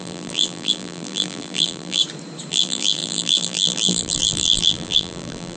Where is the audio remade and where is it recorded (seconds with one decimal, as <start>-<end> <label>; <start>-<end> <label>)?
0.0-2.0 remade; 2.0-2.5 recorded; 2.5-5.6 remade